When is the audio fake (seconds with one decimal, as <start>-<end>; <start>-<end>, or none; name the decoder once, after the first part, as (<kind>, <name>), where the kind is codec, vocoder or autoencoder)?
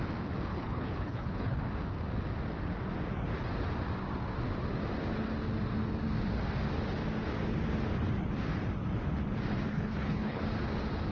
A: 0.5-1.6 (codec, HILCodec); 9.7-10.4